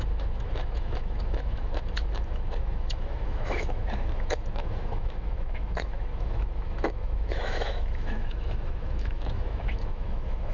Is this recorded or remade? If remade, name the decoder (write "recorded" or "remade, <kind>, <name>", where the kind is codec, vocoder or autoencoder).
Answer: remade, autoencoder, DAC-VAE